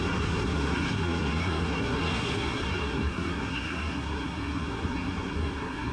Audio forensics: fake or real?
fake